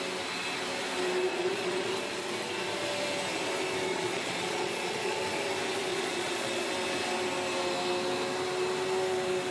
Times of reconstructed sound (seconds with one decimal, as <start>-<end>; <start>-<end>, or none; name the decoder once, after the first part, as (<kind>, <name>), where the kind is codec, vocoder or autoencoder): 1.3-1.9 (vocoder, Vocos); 3.9-5.2; 5.9-6.7